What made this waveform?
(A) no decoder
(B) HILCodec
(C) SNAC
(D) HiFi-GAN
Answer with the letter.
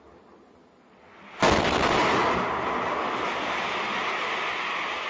A